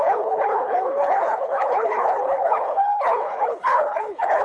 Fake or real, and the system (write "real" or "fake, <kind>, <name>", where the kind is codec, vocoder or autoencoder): fake, codec, HILCodec